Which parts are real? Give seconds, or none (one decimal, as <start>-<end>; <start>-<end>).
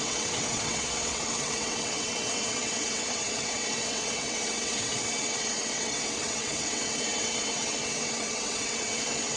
none